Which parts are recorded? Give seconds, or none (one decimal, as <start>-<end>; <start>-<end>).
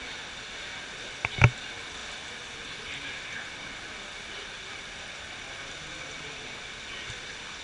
0.0-7.6